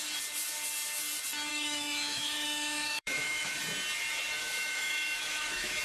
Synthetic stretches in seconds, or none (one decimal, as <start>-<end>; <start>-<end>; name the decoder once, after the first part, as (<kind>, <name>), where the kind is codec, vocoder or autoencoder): 1.5-3.6 (autoencoder, DAC-VAE); 4.4-5.8